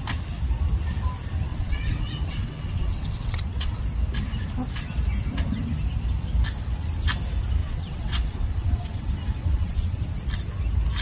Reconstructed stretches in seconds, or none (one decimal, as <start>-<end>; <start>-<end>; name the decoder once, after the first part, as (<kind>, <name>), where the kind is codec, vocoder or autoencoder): 1.5-3.8 (vocoder, WaveNeXt); 7.6-9.0; 9.4-10.0